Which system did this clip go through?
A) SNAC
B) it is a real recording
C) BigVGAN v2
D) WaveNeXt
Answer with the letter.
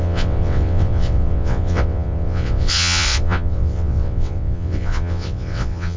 D